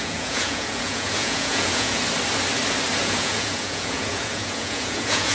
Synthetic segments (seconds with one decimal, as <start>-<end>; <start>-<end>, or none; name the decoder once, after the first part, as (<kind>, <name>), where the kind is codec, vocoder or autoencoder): 0.0-2.0 (vocoder, Vocos); 3.0-5.3